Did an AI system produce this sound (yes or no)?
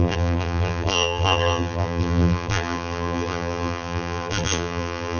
yes